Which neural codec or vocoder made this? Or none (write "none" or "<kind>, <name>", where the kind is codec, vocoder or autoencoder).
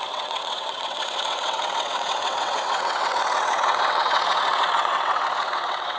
vocoder, WaveNeXt